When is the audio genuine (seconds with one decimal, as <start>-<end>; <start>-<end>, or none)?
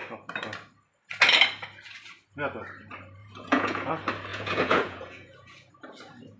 0.0-3.2; 3.9-4.3; 5.7-6.4